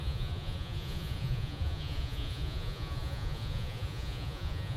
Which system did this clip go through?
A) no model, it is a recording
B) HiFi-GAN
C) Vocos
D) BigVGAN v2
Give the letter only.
C